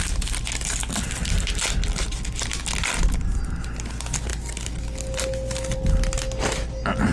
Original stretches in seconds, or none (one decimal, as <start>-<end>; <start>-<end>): 0.0-7.1